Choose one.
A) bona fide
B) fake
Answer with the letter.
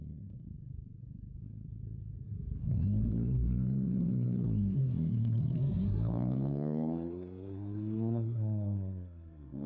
B